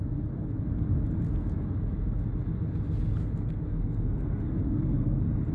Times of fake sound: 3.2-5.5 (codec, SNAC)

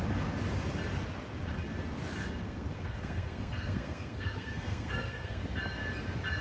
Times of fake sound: 2.4-5.4 (codec, SNAC)

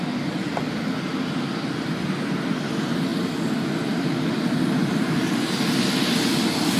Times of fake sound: none

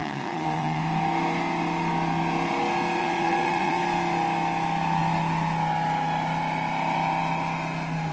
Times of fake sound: 0.0-0.8 (vocoder, WaveNeXt); 3.0-3.8

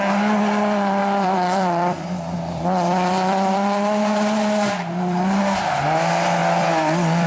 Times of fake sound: 1.0-5.4 (vocoder, BigVGAN v2); 6.4-7.3

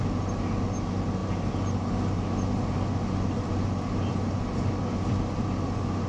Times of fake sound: none

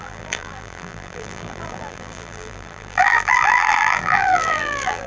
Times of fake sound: 0.0-5.1 (vocoder, BigVGAN v2)

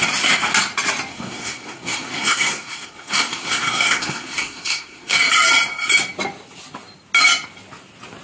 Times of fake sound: 1.1-5.2 (codec, SNAC)